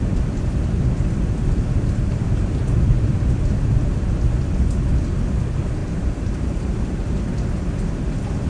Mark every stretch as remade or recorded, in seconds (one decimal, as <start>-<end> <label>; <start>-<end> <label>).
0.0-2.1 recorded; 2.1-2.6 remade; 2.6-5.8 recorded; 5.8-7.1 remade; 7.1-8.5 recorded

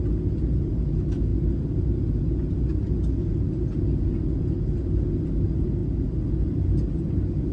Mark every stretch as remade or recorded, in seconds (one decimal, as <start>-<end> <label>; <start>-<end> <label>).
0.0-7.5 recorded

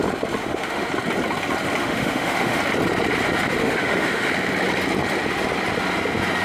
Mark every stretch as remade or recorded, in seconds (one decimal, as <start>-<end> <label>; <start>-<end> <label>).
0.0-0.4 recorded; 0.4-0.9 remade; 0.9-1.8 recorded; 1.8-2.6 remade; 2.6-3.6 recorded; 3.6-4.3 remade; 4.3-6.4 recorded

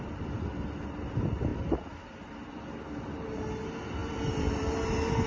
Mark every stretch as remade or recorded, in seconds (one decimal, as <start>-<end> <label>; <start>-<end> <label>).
0.0-4.0 recorded; 4.0-5.3 remade

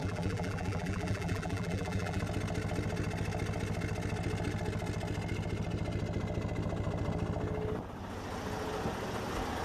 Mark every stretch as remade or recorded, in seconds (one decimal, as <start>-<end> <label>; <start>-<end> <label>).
0.0-2.2 remade; 2.2-9.6 recorded

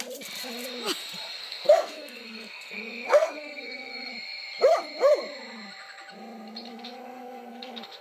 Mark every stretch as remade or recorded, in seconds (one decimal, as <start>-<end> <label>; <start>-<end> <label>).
0.0-1.4 recorded; 1.4-4.1 remade; 4.1-6.7 recorded; 6.7-8.0 remade

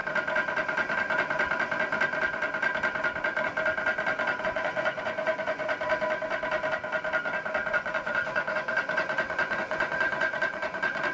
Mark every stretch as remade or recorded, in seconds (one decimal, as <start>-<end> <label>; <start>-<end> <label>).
0.0-4.4 recorded; 4.4-5.6 remade; 5.6-7.7 recorded; 7.7-11.1 remade